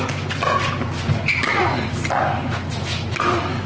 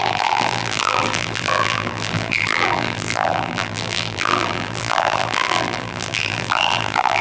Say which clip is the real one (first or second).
first